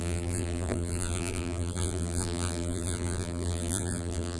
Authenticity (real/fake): fake